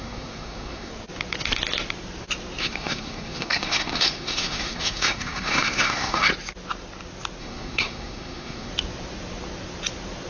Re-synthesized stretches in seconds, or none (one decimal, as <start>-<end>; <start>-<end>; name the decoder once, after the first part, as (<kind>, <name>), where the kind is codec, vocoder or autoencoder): 0.0-0.9 (codec, SNAC); 2.6-6.3; 7.4-8.7